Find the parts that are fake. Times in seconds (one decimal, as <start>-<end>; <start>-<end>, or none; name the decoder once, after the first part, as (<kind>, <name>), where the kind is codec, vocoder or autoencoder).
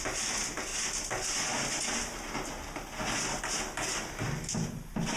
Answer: none